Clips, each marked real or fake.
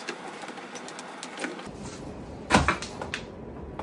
real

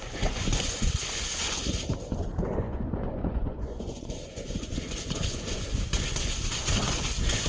fake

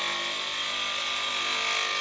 real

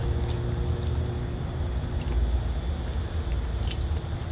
real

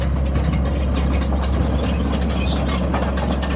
real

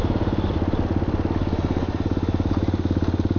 real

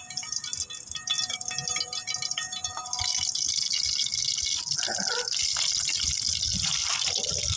real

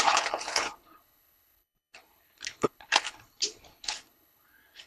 fake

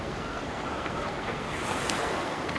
fake